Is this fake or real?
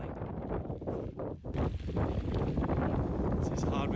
fake